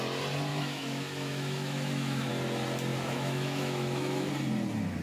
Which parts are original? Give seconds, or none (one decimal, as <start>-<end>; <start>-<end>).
0.0-0.5; 2.3-2.9; 4.3-5.0